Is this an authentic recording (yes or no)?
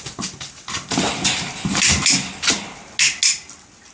yes